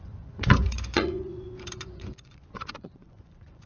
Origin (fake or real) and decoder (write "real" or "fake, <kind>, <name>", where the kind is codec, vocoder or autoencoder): fake, vocoder, Vocos